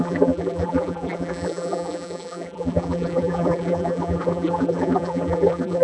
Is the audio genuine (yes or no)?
no